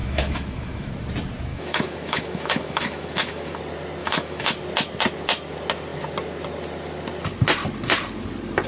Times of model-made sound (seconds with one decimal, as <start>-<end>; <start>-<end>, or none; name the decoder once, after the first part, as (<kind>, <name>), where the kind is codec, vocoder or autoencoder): 0.0-0.9 (autoencoder, DAC-VAE); 1.5-3.6; 4.0-4.6